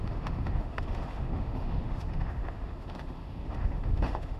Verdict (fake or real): fake